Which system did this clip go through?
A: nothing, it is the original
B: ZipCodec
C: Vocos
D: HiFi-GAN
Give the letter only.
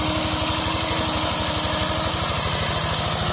A